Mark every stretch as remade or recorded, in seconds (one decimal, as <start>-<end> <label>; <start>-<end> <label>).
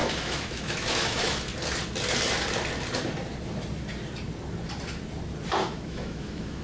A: 0.0-1.5 remade; 1.5-5.5 recorded; 5.5-6.6 remade